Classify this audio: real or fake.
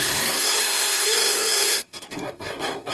fake